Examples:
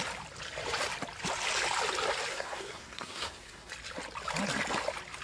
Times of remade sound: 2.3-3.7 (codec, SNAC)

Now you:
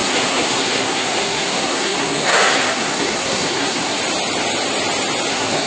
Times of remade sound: 0.0-4.0 (codec, SNAC); 5.3-5.7

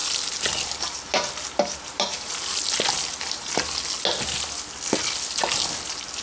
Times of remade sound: none

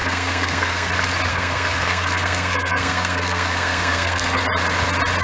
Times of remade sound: 0.0-0.9 (codec, SNAC); 1.3-4.4

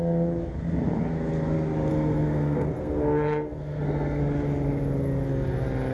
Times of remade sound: 1.9-4.2 (codec, SNAC)

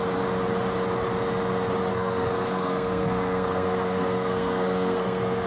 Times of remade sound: 1.9-5.5 (codec, SNAC)

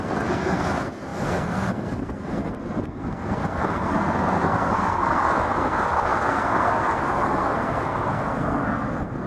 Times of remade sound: 0.0-9.3 (codec, SNAC)